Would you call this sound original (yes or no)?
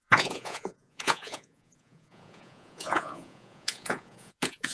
no